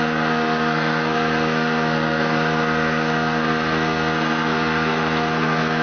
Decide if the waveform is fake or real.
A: fake